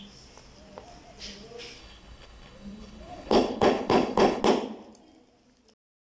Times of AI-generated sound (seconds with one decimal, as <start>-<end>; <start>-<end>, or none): 1.8-4.4